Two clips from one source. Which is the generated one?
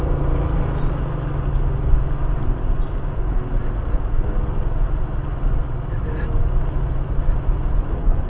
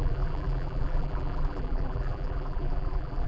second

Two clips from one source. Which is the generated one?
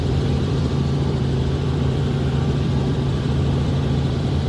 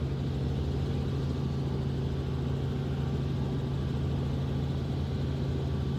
first